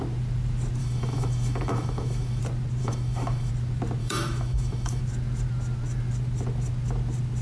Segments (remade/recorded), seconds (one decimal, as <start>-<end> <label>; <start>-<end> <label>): 0.0-0.8 recorded; 0.8-2.4 remade; 2.4-2.8 recorded; 2.8-3.5 remade; 3.5-4.0 recorded; 4.0-5.0 remade; 5.0-7.4 recorded